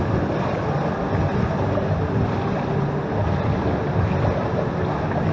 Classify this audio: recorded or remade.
recorded